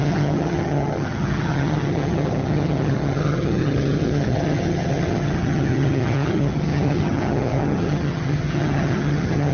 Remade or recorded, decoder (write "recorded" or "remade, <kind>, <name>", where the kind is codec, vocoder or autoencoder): remade, vocoder, HiFi-GAN